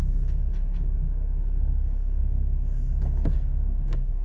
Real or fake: fake